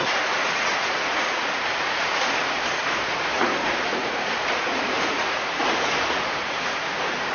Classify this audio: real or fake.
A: fake